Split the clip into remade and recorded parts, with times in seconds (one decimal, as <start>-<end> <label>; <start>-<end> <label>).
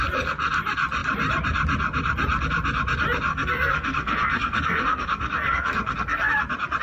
0.0-3.3 recorded; 3.3-6.3 remade; 6.3-6.8 recorded